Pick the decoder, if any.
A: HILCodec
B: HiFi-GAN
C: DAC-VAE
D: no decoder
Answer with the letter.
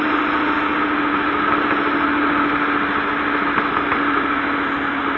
D